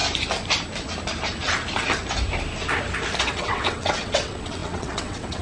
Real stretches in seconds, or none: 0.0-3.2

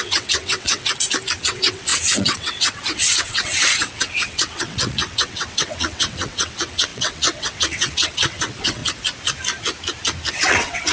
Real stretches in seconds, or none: 0.9-1.4; 8.8-10.3